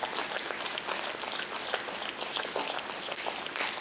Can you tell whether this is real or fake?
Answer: real